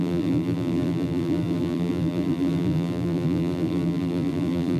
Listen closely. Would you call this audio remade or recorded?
remade